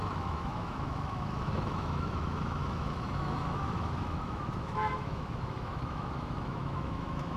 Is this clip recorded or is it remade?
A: remade